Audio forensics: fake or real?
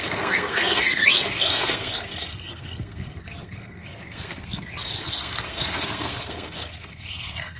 fake